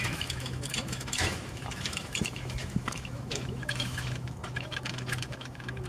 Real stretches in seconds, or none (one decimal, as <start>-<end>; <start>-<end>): none